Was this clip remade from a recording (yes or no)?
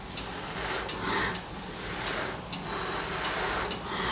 no